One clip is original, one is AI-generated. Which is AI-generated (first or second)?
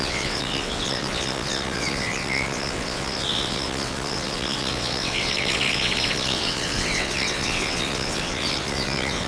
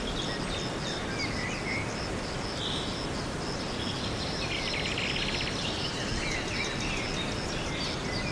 first